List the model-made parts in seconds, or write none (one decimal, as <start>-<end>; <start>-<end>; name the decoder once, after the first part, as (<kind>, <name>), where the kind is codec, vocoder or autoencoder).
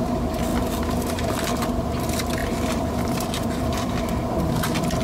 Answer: 0.5-1.5 (vocoder, BigVGAN v2); 2.4-4.0